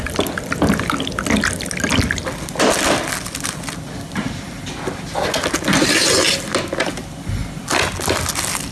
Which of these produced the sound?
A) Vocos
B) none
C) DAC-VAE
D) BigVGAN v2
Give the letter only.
B